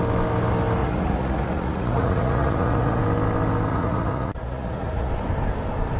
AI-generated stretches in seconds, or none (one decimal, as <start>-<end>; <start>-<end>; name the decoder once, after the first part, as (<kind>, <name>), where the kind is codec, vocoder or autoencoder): 0.8-3.0 (vocoder, Vocos); 3.7-5.1